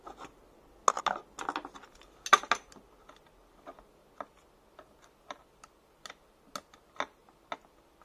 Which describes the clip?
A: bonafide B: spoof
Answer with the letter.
A